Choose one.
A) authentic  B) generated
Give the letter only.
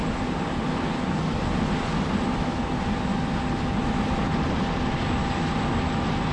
A